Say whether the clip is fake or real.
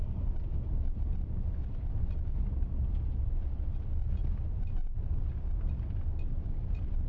real